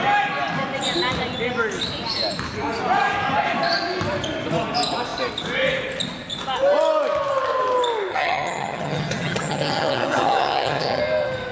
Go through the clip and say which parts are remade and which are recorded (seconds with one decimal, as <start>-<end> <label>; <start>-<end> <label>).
0.0-8.1 recorded; 8.1-11.0 remade; 11.0-11.5 recorded